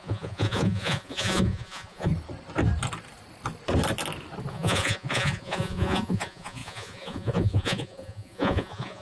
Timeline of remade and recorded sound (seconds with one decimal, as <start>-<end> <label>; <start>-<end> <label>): 0.0-2.1 remade; 2.1-4.5 recorded; 4.5-9.0 remade